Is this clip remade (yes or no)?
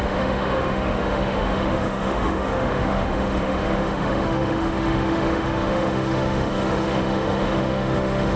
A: yes